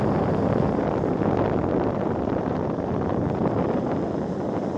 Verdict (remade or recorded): remade